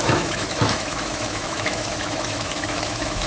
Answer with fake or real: fake